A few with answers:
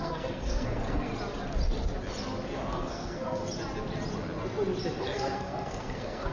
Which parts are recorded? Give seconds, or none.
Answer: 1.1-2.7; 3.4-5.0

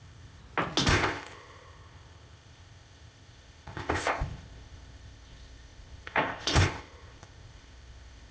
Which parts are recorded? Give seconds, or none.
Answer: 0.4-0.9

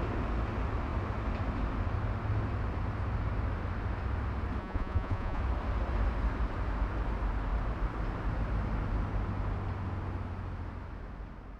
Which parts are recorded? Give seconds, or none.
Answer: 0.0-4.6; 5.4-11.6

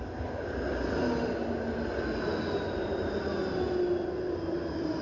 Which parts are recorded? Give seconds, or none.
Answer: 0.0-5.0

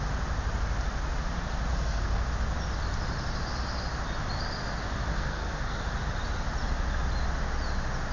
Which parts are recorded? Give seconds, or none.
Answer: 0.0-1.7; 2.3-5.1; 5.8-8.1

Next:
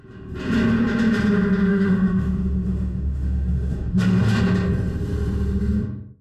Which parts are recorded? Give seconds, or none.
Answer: 0.0-1.7; 4.2-6.2

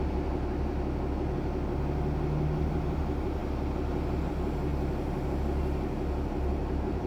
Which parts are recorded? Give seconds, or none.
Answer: 0.0-6.6

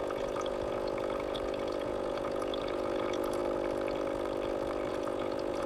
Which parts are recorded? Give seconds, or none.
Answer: 3.4-4.9